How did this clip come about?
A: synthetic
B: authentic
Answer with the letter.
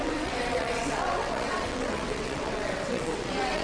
A